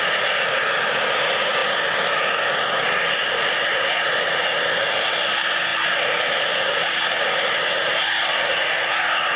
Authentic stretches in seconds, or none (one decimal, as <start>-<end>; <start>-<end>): 0.0-9.4